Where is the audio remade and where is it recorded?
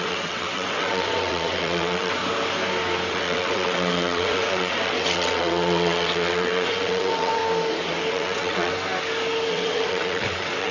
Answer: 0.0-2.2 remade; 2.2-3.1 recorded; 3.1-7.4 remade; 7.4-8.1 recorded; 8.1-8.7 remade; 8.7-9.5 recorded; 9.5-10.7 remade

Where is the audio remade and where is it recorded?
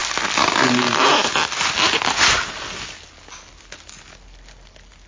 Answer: 0.0-5.1 recorded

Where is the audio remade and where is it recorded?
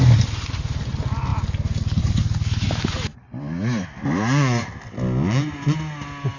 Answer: 0.0-6.4 recorded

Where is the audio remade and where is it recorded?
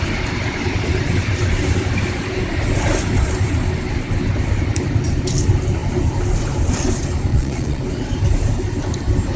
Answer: 0.0-7.3 recorded; 7.3-7.8 remade; 7.8-9.4 recorded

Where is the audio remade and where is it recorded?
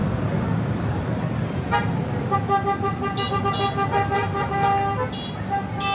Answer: 0.0-5.9 recorded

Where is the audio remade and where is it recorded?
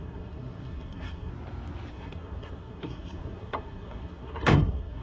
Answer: 0.0-1.3 remade; 1.3-1.9 recorded; 1.9-5.0 remade